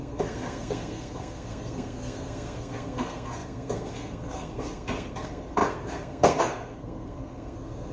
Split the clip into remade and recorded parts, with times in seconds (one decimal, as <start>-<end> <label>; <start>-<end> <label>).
0.0-7.9 remade